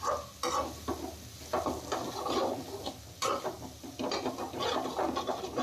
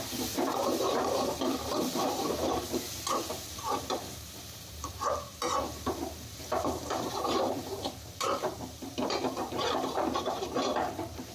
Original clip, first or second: first